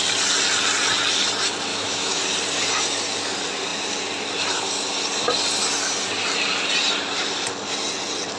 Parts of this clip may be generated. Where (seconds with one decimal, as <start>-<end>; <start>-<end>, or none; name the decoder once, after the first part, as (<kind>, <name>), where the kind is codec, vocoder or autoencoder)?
1.7-2.2 (autoencoder, DAC-VAE)